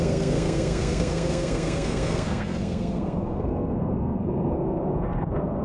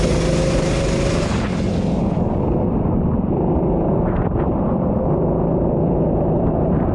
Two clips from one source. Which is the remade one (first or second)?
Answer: first